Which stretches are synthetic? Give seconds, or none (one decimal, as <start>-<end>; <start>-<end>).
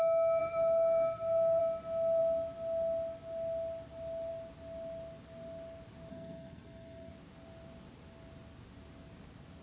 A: 0.4-1.6; 6.1-7.1